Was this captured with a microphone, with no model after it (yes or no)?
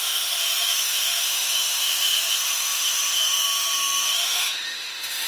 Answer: no